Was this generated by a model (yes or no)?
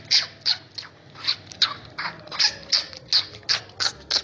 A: no